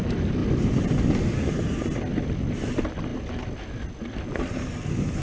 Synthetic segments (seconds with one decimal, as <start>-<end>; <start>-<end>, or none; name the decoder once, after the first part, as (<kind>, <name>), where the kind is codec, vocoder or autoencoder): 0.4-1.0 (vocoder, BigVGAN v2); 3.1-4.0